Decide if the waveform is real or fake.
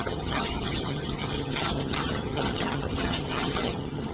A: fake